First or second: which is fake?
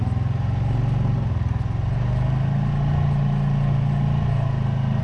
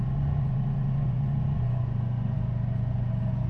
second